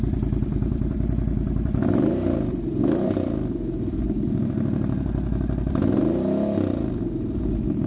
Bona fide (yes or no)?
no